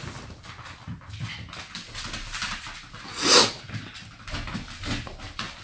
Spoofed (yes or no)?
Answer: no